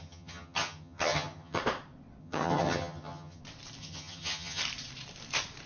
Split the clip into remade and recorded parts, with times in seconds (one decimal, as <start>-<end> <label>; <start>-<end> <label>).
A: 0.0-1.6 remade; 1.6-2.2 recorded; 2.2-3.4 remade; 3.4-3.8 recorded; 3.8-4.6 remade; 4.6-5.7 recorded